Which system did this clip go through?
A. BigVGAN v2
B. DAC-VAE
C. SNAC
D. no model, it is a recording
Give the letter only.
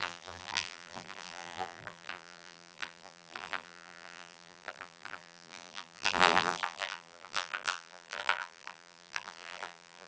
A